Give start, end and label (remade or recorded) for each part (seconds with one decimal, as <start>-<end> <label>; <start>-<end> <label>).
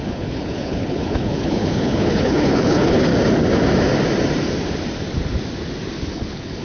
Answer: 0.0-3.1 remade; 3.1-6.1 recorded; 6.1-6.6 remade